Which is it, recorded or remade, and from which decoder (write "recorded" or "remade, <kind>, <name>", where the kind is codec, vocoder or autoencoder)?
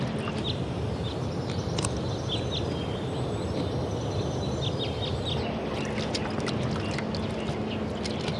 recorded